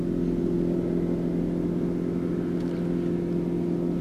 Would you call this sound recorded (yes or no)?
yes